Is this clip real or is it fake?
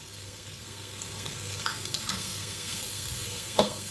fake